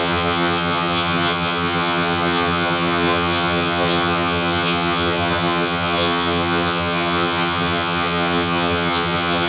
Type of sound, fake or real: fake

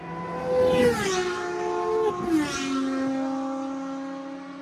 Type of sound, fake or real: real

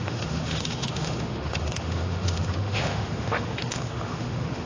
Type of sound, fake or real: fake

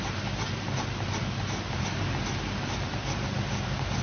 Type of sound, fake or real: real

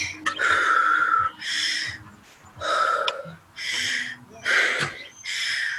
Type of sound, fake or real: real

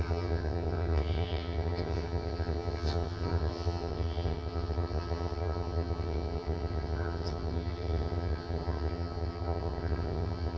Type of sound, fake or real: fake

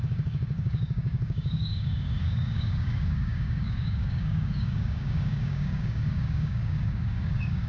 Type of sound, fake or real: fake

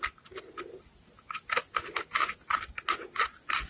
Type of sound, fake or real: real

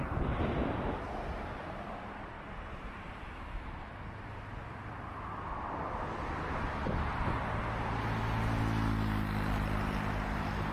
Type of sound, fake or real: real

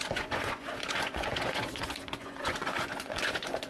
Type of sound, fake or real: fake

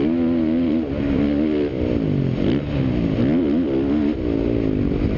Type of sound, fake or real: real